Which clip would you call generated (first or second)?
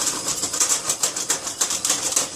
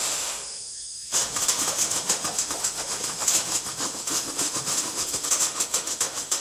second